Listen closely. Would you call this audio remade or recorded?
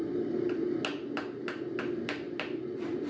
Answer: recorded